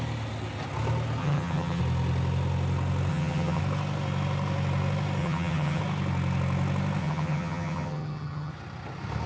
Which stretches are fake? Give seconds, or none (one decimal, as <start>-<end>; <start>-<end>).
1.2-1.8; 3.1-3.6; 5.2-5.8; 7.0-8.5